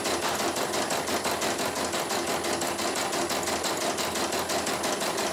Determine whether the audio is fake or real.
real